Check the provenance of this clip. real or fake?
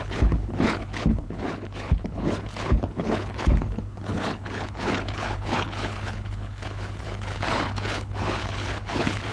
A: fake